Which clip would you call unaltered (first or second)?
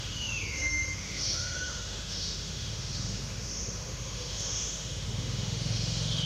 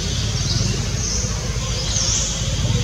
second